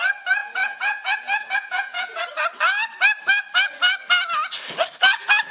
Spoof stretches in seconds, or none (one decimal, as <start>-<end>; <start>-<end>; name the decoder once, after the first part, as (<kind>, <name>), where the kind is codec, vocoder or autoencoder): 0.4-2.2 (vocoder, Vocos)